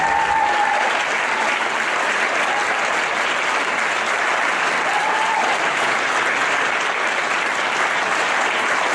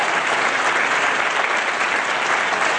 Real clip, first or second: second